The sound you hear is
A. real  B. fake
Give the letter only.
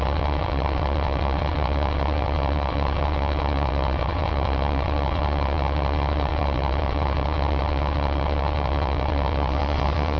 B